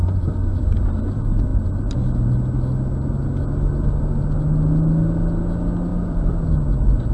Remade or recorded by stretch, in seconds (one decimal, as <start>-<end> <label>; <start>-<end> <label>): 0.0-0.6 remade; 0.6-5.9 recorded; 5.9-6.4 remade; 6.4-7.1 recorded